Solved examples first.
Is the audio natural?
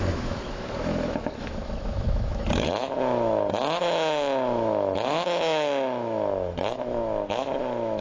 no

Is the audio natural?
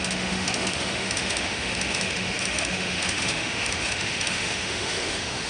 no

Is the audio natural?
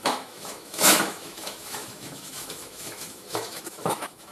no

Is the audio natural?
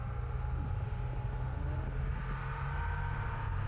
yes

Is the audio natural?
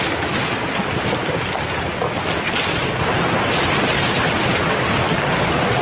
yes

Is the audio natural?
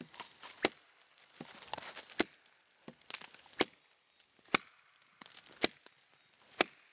yes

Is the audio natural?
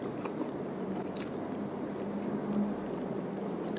yes